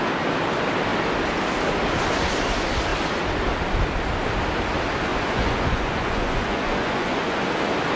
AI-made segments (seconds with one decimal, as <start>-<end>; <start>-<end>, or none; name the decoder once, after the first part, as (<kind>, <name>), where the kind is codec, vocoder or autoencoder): 5.1-7.4 (vocoder, Vocos)